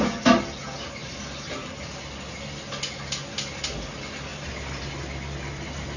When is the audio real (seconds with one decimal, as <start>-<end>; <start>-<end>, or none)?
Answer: 0.0-1.0; 2.0-4.3; 4.9-6.0